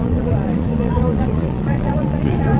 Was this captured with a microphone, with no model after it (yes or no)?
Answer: no